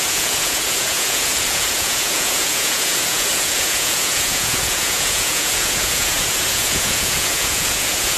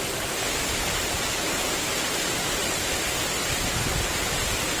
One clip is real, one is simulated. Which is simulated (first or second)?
first